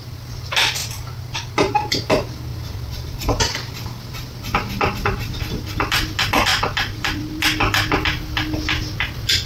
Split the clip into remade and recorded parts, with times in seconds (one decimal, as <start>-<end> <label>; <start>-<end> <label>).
0.0-2.5 recorded; 2.5-5.4 remade; 5.4-6.5 recorded; 6.5-7.4 remade; 7.4-9.5 recorded

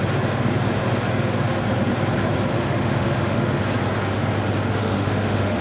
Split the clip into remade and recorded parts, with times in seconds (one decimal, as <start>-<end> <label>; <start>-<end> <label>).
0.0-2.5 recorded; 2.5-3.6 remade; 3.6-4.8 recorded; 4.8-5.6 remade